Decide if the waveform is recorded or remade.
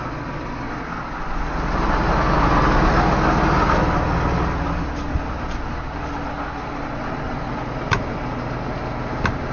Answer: recorded